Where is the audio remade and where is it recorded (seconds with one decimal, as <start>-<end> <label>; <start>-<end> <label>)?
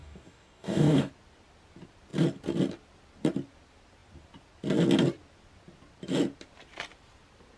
0.0-1.1 remade; 1.1-7.6 recorded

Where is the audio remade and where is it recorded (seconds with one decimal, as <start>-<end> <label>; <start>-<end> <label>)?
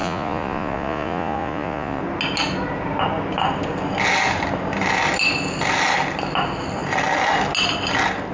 0.0-2.0 remade; 2.0-8.3 recorded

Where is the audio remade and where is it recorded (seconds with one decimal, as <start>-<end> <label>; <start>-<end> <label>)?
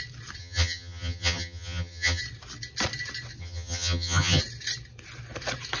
0.0-0.4 recorded; 0.4-2.2 remade; 2.2-3.4 recorded; 3.4-4.4 remade; 4.4-5.8 recorded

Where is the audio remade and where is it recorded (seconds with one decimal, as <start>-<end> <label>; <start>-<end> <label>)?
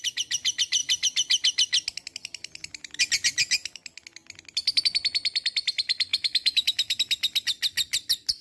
0.0-6.1 recorded; 6.1-7.0 remade; 7.0-8.4 recorded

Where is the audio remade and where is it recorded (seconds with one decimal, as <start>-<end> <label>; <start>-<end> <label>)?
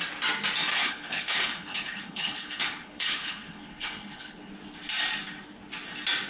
0.0-0.7 recorded; 0.7-4.5 remade; 4.5-6.3 recorded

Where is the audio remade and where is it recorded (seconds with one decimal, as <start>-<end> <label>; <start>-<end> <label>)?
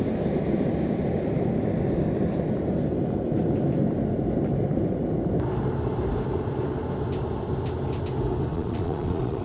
0.0-8.5 recorded; 8.5-9.4 remade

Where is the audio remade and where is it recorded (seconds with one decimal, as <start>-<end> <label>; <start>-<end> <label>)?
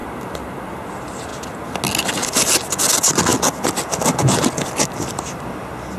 0.0-6.0 recorded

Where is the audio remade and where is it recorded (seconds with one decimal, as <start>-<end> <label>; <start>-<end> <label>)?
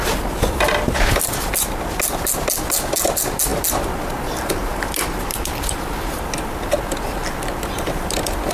0.0-8.5 recorded